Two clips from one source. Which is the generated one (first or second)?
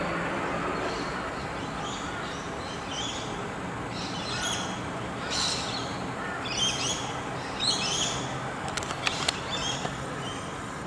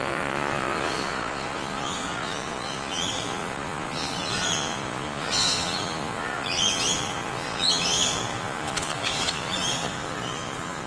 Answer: second